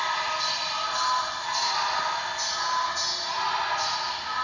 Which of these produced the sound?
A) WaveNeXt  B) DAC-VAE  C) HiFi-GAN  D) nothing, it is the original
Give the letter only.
D